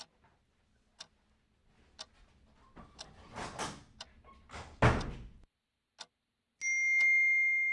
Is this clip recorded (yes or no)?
yes